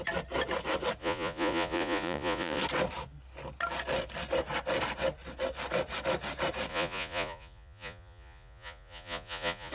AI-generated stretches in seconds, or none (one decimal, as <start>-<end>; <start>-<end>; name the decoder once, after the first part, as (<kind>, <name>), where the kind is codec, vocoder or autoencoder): 1.0-2.6 (vocoder, Vocos); 6.7-9.7